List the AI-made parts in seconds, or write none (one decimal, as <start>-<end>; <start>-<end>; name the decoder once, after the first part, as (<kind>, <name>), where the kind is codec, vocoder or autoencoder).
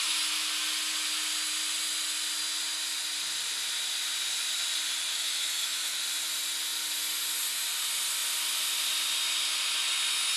5.1-6.0 (autoencoder, DAC-VAE)